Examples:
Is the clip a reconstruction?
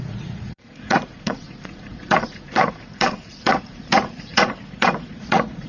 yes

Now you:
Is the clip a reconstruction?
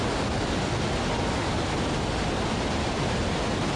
no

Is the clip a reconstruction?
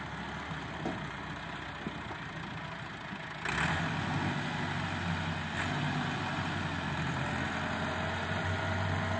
no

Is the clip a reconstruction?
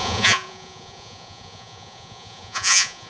yes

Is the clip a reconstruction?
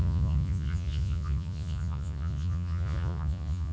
yes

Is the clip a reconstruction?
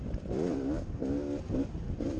no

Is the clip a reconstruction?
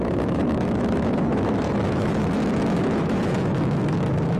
yes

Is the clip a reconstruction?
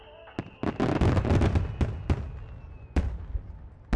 no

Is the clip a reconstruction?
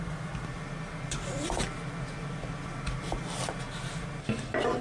no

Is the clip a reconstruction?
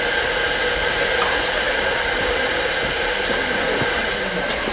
no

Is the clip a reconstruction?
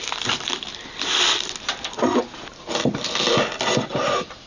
no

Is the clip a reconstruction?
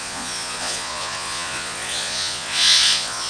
yes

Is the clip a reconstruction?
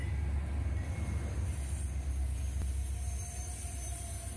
no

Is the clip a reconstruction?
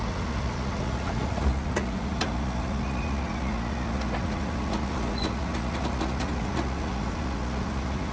yes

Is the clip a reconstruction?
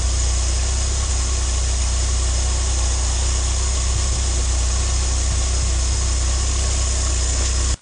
no